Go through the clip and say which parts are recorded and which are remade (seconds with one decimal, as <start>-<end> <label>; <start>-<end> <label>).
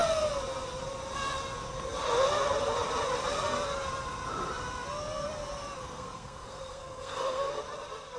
0.0-5.8 recorded; 5.8-7.6 remade; 7.6-8.2 recorded